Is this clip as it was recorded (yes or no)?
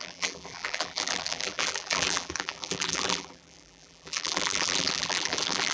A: no